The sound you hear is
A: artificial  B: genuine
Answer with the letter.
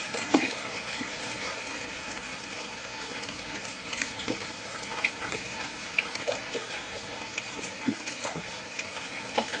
A